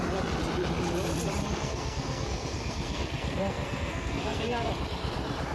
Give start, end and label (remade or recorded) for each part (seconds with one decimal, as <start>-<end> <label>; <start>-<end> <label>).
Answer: 0.0-1.4 recorded; 1.4-4.7 remade; 4.7-5.5 recorded